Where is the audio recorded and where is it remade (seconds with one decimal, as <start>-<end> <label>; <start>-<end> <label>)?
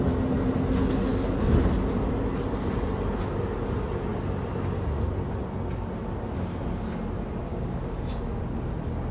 0.0-7.5 recorded; 7.5-8.4 remade; 8.4-9.1 recorded